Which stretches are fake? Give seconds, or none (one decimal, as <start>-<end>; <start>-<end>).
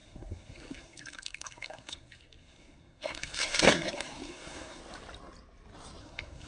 0.0-4.8; 6.0-6.5